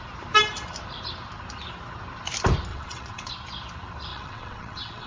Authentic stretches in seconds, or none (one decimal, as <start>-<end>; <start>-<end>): 0.0-2.7; 3.3-4.1

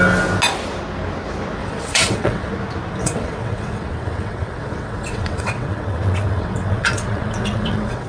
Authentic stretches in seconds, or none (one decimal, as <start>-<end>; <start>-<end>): 0.0-1.6; 2.5-3.0

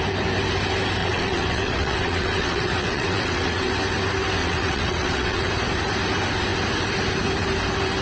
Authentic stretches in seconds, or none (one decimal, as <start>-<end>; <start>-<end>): 0.0-1.0; 3.7-4.4; 5.5-8.0

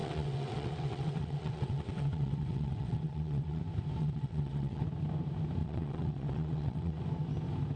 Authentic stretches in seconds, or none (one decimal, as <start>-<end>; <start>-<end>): 3.6-4.0; 4.8-5.6; 7.0-7.8

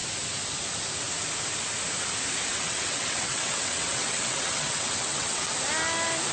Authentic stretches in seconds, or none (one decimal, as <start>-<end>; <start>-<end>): 0.0-2.5; 5.5-6.3